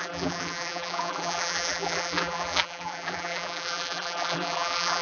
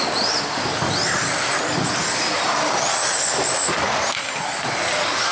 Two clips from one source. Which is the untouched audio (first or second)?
second